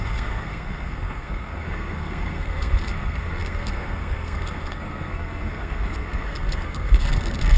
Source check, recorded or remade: remade